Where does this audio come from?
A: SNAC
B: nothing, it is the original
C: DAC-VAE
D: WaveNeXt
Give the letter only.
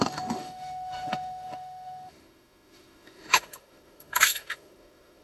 C